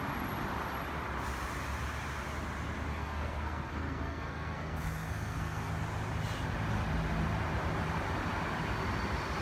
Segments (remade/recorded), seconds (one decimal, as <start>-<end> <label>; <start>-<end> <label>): 0.0-2.9 recorded; 2.9-5.7 remade; 5.7-9.4 recorded